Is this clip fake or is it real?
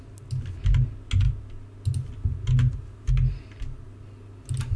real